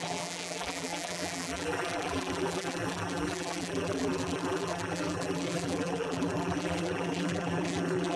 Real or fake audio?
fake